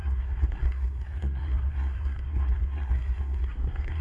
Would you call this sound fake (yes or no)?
yes